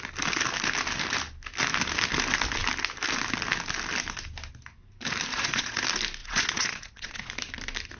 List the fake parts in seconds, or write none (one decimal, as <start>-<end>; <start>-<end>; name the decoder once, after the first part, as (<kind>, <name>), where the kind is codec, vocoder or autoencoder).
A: 5.3-5.8 (vocoder, Vocos); 6.2-7.3